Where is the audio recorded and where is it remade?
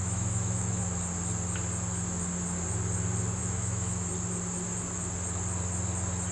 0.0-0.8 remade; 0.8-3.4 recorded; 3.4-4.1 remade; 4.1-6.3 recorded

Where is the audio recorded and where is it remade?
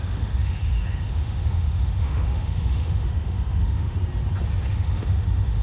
0.0-4.0 remade; 4.0-4.7 recorded; 4.7-5.6 remade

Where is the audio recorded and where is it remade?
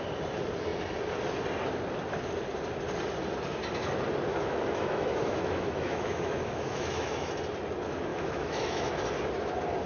0.0-4.3 recorded; 4.3-7.3 remade; 7.3-8.1 recorded; 8.1-8.9 remade; 8.9-9.9 recorded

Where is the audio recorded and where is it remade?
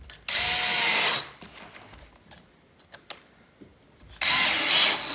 0.0-5.1 recorded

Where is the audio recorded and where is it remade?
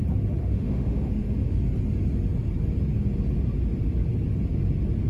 0.0-0.4 recorded; 0.4-1.6 remade; 1.6-5.1 recorded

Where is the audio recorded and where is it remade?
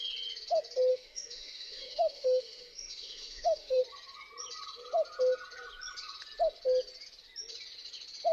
0.0-0.9 recorded; 0.9-3.8 remade; 3.8-8.3 recorded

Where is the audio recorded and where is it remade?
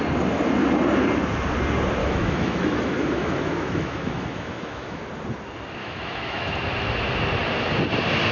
0.0-2.0 recorded; 2.0-5.0 remade; 5.0-5.8 recorded; 5.8-6.5 remade; 6.5-8.3 recorded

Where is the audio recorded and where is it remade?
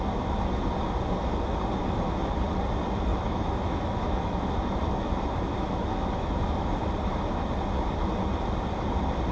0.0-1.8 recorded; 1.8-2.3 remade; 2.3-3.1 recorded; 3.1-6.9 remade; 6.9-9.3 recorded